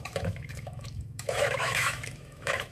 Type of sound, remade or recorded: remade